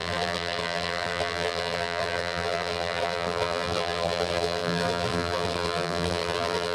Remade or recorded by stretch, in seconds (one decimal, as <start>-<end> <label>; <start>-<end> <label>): 0.0-6.7 remade